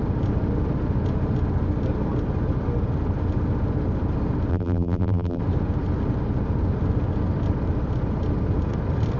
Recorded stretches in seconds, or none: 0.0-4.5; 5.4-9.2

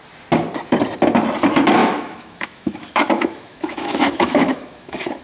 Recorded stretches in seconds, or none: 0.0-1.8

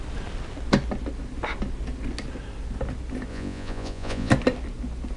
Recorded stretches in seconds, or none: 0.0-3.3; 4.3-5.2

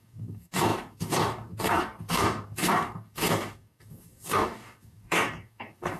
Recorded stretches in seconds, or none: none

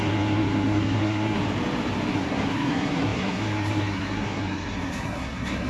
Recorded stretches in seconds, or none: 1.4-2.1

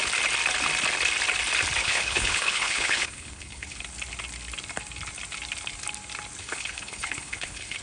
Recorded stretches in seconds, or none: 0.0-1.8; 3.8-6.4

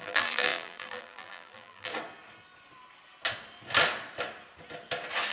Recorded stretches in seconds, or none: 1.9-5.3